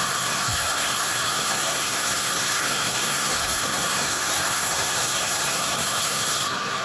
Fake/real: fake